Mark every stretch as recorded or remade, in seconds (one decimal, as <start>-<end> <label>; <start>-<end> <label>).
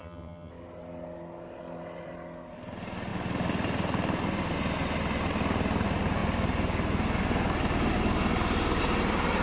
0.0-0.5 remade; 0.5-9.4 recorded